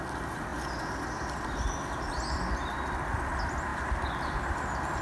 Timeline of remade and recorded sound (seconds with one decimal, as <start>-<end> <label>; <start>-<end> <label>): 0.0-5.0 recorded